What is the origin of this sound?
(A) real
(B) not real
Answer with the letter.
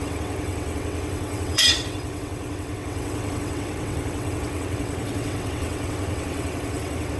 B